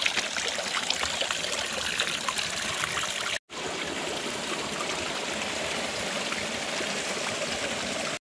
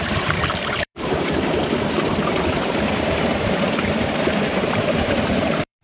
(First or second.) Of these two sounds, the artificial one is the second